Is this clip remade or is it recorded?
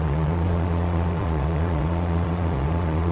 remade